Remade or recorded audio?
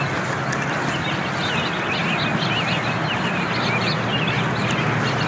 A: recorded